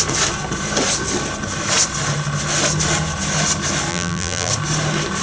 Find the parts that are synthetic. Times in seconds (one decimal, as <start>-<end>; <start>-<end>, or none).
3.9-4.5